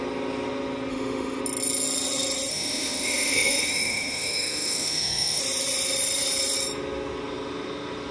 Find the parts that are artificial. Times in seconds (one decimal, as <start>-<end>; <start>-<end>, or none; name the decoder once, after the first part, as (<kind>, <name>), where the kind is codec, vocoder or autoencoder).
0.9-1.4 (autoencoder, DAC-VAE); 2.5-5.4